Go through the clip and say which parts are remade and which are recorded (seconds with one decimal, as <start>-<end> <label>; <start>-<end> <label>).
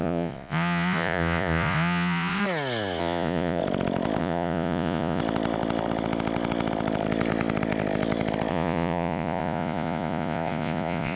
0.0-2.4 remade; 2.4-3.0 recorded; 3.0-3.6 remade; 3.6-4.2 recorded; 4.2-5.2 remade; 5.2-8.5 recorded; 8.5-11.2 remade